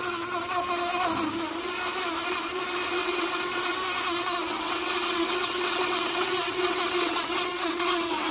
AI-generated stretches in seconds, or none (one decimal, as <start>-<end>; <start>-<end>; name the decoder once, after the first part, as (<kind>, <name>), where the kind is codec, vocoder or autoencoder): 3.0-3.6 (vocoder, WaveNeXt); 4.4-8.3